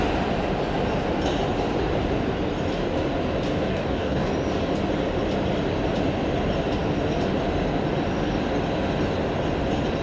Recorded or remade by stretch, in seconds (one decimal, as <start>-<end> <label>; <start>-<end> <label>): 0.0-3.7 recorded; 3.7-4.3 remade; 4.3-10.0 recorded